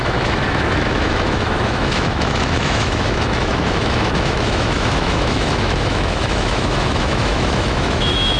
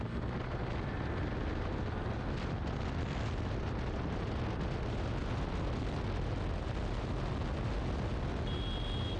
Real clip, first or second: second